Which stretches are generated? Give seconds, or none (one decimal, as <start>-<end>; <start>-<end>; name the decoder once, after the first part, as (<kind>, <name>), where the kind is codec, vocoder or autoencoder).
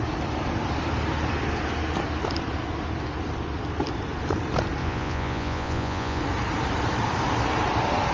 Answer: 4.8-6.2 (vocoder, Vocos)